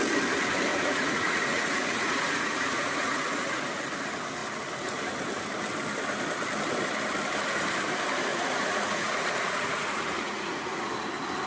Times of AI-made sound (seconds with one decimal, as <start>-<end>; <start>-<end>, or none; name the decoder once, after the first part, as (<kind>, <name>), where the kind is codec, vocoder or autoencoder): 0.7-3.8 (vocoder, Vocos); 8.3-10.9